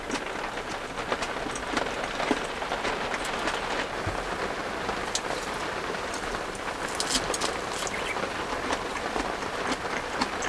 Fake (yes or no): no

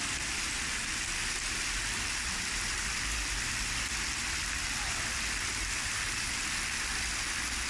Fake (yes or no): no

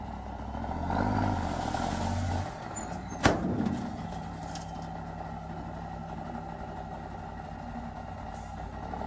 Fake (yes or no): no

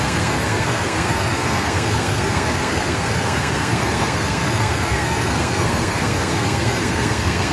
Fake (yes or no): yes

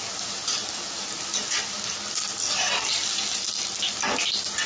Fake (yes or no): no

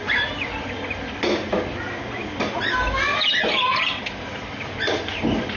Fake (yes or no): no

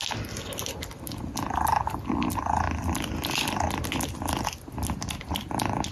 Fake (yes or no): no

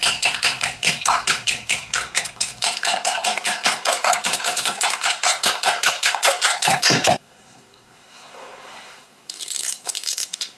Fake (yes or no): yes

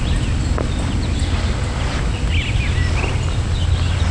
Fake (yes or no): no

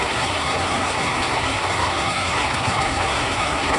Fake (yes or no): yes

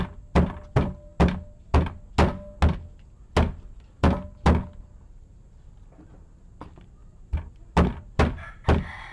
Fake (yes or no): no